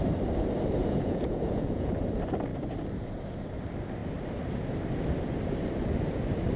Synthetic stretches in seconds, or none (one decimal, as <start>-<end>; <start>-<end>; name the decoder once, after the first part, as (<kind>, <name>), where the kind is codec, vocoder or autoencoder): 0.8-1.9 (vocoder, Vocos)

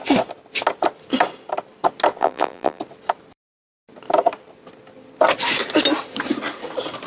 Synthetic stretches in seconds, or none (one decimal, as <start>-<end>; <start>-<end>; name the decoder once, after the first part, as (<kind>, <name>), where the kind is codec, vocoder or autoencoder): 2.2-2.8 (vocoder, BigVGAN v2)

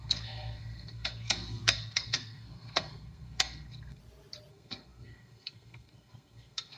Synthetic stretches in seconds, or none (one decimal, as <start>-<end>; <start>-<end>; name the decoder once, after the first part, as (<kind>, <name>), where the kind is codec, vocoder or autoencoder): 0.0-4.0 (codec, SNAC); 4.5-6.8